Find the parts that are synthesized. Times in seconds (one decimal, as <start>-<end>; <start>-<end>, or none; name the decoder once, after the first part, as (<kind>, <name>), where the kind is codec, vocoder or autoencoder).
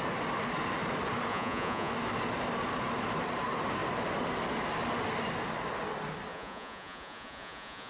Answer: 1.3-1.9 (vocoder, Vocos); 6.3-7.9